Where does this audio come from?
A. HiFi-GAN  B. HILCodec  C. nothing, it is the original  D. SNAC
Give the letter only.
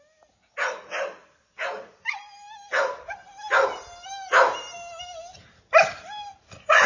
C